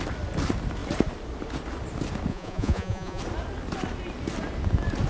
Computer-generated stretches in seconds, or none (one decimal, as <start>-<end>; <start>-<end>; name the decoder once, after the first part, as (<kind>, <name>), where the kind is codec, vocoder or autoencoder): 2.3-3.2 (vocoder, Vocos)